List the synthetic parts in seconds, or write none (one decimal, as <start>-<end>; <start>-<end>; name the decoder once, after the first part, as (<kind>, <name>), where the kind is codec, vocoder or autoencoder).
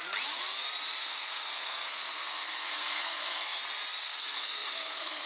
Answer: 1.0-3.6 (codec, SNAC); 4.0-5.3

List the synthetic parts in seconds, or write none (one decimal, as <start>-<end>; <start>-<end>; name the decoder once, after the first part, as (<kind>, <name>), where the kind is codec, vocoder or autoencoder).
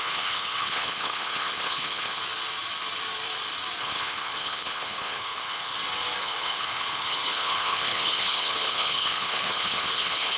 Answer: 0.0-2.2 (codec, HILCodec); 3.8-5.7; 6.2-10.4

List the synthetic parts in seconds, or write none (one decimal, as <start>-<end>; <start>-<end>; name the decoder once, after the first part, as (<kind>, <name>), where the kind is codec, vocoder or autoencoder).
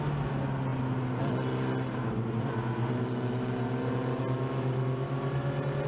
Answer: none